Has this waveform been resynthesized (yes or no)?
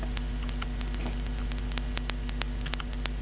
no